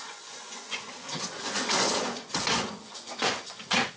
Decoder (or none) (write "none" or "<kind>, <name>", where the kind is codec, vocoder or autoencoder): vocoder, Vocos